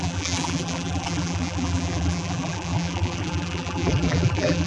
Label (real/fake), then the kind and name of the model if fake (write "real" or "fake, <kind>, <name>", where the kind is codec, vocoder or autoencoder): fake, vocoder, BigVGAN v2